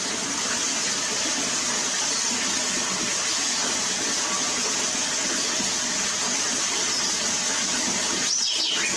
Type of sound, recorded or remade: recorded